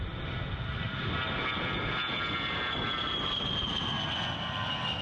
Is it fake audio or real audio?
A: real